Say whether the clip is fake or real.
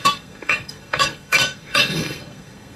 fake